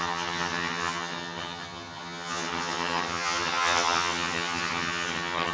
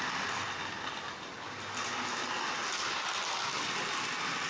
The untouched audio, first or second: second